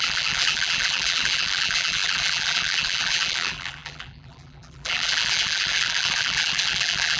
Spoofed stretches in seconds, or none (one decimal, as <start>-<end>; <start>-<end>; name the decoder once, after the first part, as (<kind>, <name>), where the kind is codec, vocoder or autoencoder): 0.0-7.2 (vocoder, BigVGAN v2)